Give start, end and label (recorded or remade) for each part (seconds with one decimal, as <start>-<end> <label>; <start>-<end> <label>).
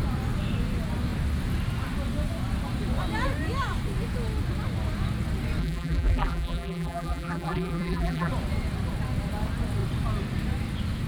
0.0-5.6 recorded; 5.6-8.3 remade; 8.3-11.1 recorded